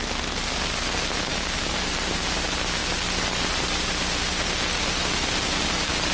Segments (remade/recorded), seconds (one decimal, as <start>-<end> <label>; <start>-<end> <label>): 0.0-6.1 recorded